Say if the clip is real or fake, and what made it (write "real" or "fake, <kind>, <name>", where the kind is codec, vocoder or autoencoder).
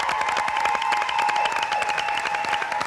real